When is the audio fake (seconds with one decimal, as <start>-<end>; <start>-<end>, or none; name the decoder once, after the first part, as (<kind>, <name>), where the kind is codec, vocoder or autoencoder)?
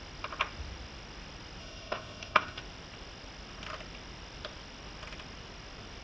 1.6-2.6 (codec, ZipCodec)